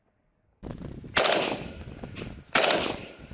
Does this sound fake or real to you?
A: real